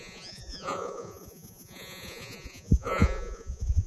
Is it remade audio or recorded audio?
remade